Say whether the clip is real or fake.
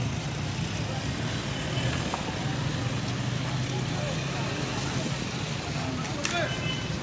real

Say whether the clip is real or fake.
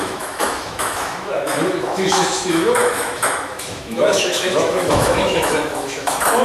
fake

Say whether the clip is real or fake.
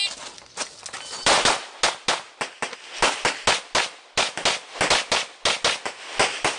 real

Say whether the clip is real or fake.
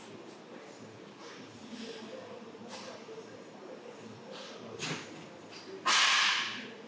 real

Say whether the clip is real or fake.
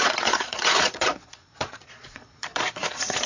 fake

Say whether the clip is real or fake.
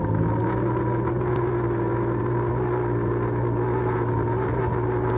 real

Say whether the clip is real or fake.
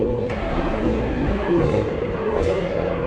fake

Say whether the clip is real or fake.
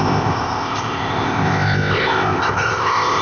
fake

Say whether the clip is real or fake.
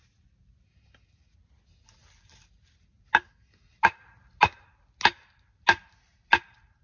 real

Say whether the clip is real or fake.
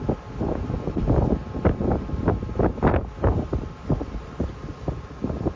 real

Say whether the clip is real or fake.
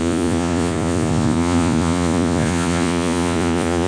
fake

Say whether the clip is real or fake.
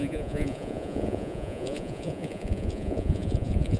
fake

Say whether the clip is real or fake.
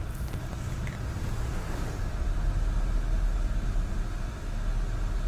real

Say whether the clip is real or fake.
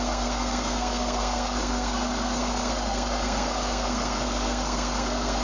fake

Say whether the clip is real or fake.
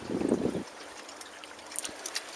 real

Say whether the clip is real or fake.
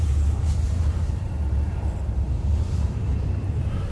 fake